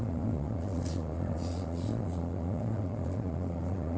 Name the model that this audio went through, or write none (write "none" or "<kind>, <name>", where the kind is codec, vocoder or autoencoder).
vocoder, Vocos